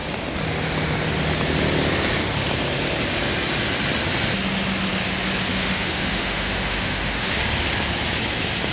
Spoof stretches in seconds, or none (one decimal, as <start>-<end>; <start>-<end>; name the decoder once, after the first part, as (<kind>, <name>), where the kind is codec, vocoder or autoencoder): 5.5-7.4 (autoencoder, DAC-VAE)